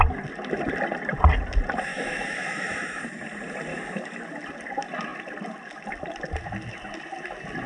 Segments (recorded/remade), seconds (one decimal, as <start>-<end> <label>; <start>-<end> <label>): 0.0-1.9 recorded; 1.9-3.0 remade; 3.0-3.7 recorded; 3.7-4.2 remade; 4.2-7.7 recorded